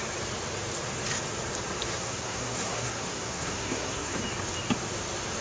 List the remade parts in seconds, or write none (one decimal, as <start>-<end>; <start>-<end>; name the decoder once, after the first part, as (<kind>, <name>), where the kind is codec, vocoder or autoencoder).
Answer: 1.9-4.2 (codec, SNAC)